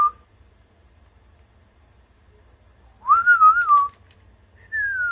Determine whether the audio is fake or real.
real